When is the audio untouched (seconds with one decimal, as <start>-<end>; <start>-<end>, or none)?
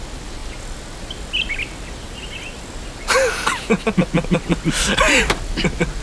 0.0-6.0